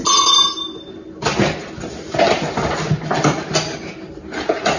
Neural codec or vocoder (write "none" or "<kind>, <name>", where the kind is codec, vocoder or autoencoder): none